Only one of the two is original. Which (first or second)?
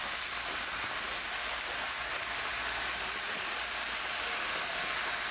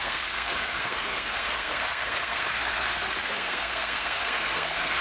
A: first